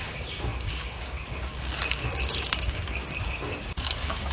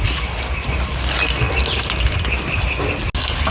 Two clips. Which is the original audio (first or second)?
second